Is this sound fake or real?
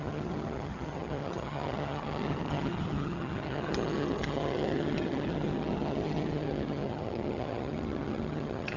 fake